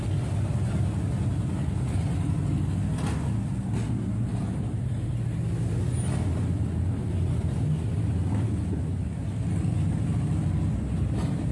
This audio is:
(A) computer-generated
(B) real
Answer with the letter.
B